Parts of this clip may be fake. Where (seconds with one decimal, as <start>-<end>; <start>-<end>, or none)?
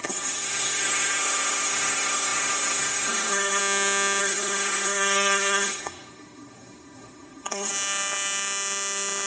0.0-3.6; 4.2-7.7